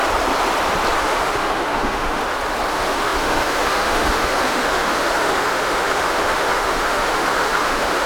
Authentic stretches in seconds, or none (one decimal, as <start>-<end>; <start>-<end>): 0.0-1.0; 2.2-2.7